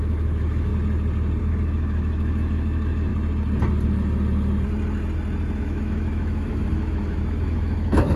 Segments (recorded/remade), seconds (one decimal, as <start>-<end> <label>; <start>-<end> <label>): 0.0-0.7 remade; 0.7-1.4 recorded; 1.4-3.1 remade; 3.1-5.6 recorded; 5.6-8.2 remade